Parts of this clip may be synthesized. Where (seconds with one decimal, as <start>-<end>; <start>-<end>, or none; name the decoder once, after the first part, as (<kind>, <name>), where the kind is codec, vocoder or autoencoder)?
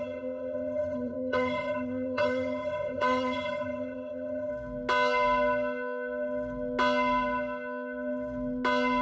0.0-4.5 (vocoder, HiFi-GAN)